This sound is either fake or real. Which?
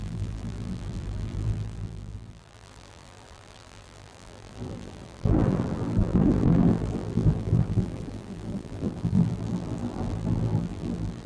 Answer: fake